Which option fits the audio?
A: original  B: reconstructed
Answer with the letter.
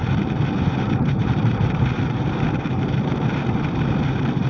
B